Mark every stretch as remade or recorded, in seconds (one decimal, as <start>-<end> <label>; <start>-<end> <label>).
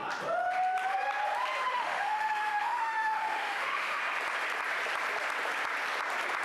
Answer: 0.0-1.7 recorded; 1.7-4.0 remade; 4.0-6.4 recorded